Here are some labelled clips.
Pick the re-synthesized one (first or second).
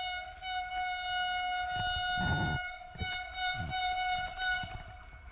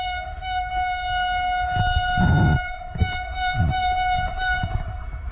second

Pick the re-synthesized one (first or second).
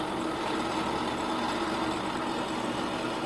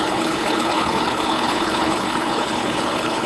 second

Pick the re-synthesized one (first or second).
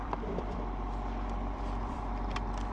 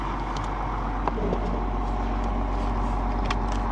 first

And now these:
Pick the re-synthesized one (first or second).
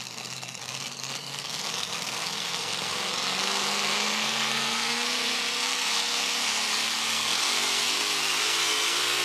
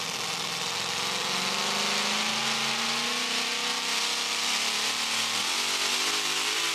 first